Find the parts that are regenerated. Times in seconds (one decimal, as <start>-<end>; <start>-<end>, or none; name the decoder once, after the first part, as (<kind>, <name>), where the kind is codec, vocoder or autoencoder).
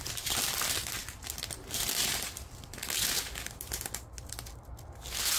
none